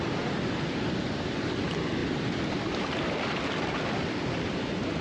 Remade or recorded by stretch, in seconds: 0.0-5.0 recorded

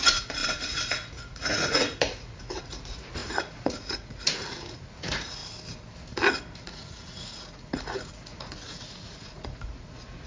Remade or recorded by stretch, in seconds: 0.0-5.4 remade; 5.4-6.6 recorded; 6.6-10.3 remade

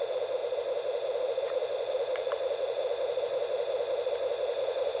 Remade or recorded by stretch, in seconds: 0.0-0.4 remade; 0.4-1.2 recorded; 1.2-2.8 remade; 2.8-4.6 recorded; 4.6-5.0 remade

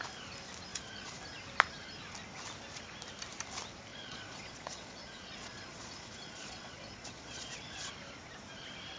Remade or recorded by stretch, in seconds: 0.0-0.7 recorded; 0.7-1.2 remade; 1.2-3.9 recorded; 3.9-7.9 remade; 7.9-9.0 recorded

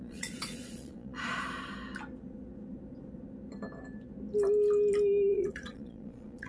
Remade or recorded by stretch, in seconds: 0.0-1.4 remade; 1.4-5.3 recorded; 5.3-6.5 remade

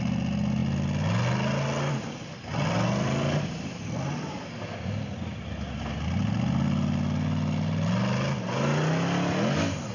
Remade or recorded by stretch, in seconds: 0.0-9.9 recorded

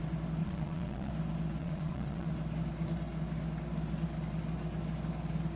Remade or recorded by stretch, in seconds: 0.0-0.4 recorded; 0.4-1.1 remade; 1.1-1.6 recorded; 1.6-2.3 remade; 2.3-5.6 recorded

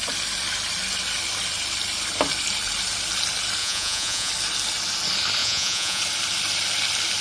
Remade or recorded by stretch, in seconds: 0.0-3.6 recorded; 3.6-4.3 remade; 4.3-5.4 recorded; 5.4-6.0 remade; 6.0-7.2 recorded